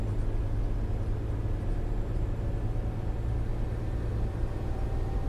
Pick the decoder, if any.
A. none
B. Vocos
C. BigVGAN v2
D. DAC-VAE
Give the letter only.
A